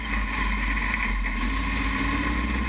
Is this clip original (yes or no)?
yes